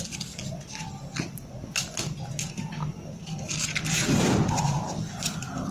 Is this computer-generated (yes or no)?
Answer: no